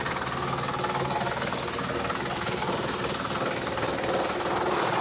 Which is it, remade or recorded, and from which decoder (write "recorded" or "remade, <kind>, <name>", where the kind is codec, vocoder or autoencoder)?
recorded